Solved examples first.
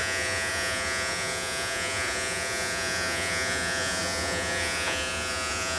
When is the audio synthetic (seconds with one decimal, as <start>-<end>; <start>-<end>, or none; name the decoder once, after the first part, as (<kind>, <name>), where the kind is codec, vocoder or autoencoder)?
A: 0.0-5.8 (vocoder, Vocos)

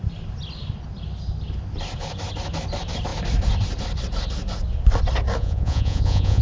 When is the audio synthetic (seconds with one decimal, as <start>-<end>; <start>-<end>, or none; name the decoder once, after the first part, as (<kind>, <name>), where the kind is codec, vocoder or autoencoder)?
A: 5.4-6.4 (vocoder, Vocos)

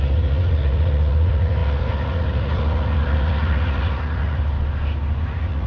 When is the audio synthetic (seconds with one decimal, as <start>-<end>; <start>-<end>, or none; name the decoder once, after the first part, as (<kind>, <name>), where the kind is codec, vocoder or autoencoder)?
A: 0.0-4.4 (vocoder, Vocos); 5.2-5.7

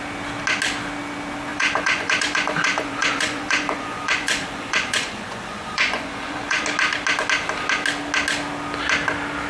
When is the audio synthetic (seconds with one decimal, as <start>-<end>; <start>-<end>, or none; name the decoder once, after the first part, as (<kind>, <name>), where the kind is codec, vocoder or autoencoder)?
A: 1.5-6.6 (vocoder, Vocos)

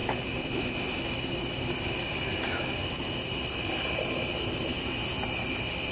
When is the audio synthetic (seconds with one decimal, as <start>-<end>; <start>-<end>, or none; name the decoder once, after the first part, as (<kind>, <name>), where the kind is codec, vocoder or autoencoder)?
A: none

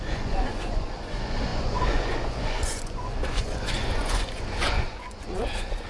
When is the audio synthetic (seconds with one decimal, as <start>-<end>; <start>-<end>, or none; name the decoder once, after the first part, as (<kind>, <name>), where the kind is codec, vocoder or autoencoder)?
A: 0.0-5.9 (vocoder, Vocos)